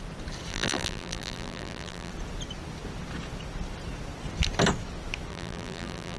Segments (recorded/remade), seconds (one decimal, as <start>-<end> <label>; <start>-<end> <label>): 0.0-0.5 recorded; 0.5-2.1 remade; 2.1-5.3 recorded; 5.3-6.2 remade